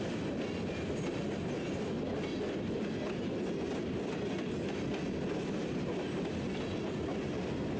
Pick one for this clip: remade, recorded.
recorded